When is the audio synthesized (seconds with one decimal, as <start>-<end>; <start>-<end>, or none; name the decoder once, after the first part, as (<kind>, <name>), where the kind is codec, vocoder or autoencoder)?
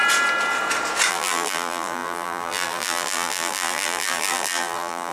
1.1-5.1 (vocoder, BigVGAN v2)